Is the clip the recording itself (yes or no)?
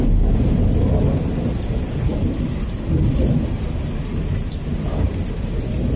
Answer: yes